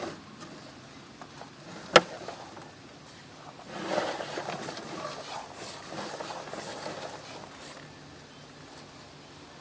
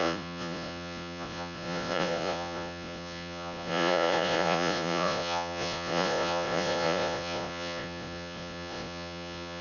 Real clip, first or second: first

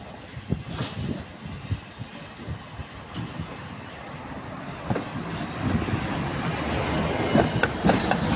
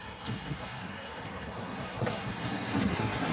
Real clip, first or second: first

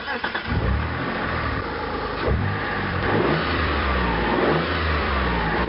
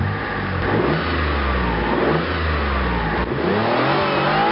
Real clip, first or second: second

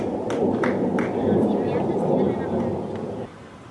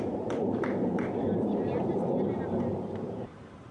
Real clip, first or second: first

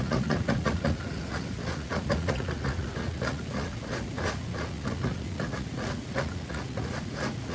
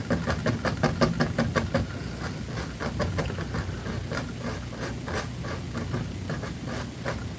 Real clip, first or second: second